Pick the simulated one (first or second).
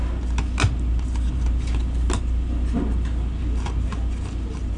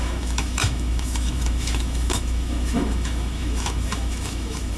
second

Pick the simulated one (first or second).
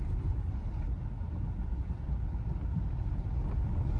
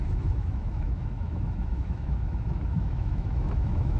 second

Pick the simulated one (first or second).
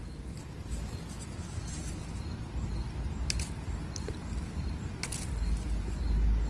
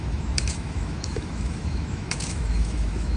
second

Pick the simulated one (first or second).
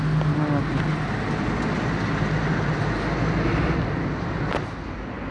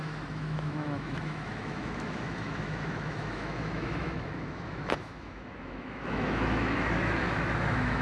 second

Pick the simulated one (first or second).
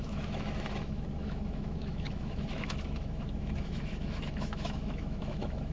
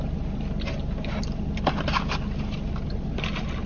first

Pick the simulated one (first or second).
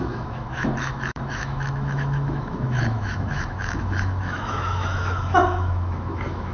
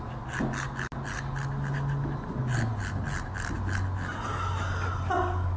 first